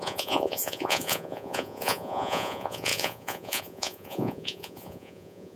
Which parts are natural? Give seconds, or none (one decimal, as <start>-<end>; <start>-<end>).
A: none